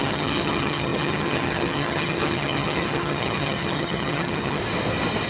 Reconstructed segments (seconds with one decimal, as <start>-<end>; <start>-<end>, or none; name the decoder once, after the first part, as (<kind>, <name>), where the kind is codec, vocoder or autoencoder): 0.0-4.6 (vocoder, HiFi-GAN)